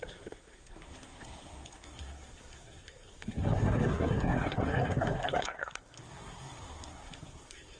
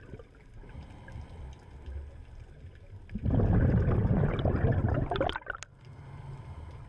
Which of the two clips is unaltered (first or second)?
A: second